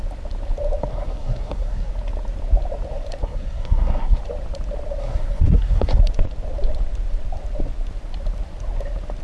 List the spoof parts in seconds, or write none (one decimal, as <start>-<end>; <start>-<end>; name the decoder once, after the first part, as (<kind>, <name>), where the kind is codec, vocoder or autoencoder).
0.9-1.9 (codec, SNAC); 3.2-4.2; 5.0-6.0